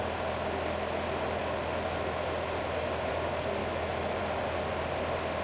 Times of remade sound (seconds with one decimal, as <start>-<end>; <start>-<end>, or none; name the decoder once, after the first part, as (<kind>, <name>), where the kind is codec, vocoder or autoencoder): 3.6-4.2 (autoencoder, DAC-VAE)